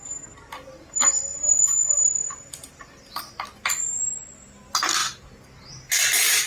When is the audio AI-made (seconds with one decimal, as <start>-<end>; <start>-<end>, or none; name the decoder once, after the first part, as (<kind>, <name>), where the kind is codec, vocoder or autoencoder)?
1.3-3.2 (vocoder, BigVGAN v2)